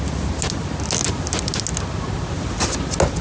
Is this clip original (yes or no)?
yes